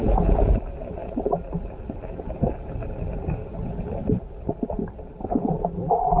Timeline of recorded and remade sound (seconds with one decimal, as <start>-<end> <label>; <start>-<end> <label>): 0.0-6.2 recorded